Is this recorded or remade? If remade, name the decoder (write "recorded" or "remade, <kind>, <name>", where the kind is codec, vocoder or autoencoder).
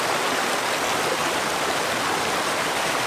recorded